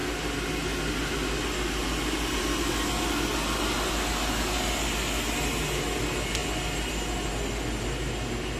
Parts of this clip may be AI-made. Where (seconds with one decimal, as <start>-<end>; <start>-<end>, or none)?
none